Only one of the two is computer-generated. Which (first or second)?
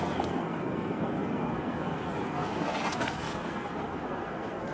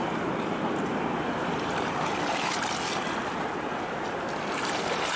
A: first